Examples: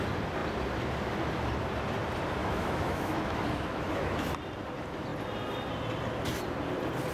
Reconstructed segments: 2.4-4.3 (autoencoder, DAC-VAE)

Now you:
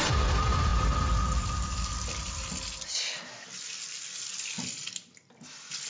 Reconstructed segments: none

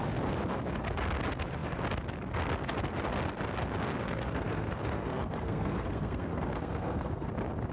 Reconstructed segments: 4.0-7.3 (codec, SNAC)

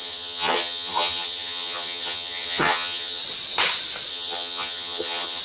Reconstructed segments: 0.0-3.2 (vocoder, HiFi-GAN); 4.1-5.4

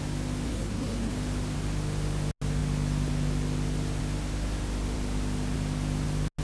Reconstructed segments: 0.5-1.1 (codec, SNAC)

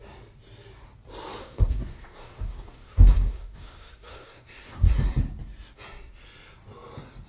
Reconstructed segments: 1.4-4.9 (codec, SNAC)

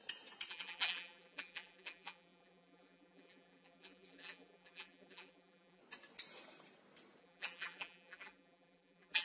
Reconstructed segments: 0.5-5.8 (vocoder, BigVGAN v2); 7.2-9.2

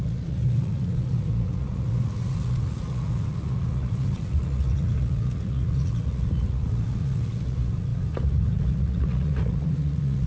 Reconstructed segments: 0.0-10.3 (vocoder, Vocos)